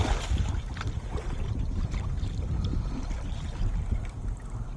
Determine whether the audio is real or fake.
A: real